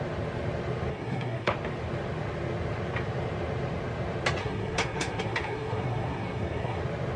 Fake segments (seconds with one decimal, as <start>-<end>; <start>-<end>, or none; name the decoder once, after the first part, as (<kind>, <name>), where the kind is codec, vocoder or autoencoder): 0.9-1.5 (codec, SNAC); 4.4-6.8